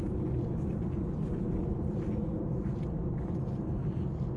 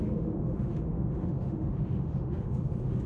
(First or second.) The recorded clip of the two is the first